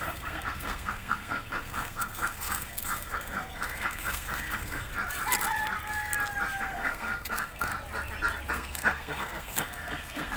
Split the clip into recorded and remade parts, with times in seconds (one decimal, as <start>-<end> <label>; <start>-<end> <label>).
0.0-4.9 remade; 4.9-6.6 recorded; 6.6-7.7 remade; 7.7-8.5 recorded; 8.5-10.4 remade